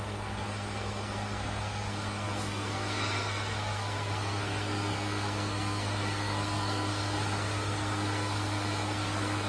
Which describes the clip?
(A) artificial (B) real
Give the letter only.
A